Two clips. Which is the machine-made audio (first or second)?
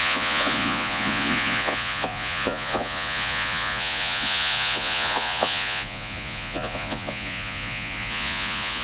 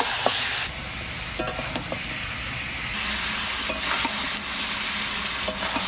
first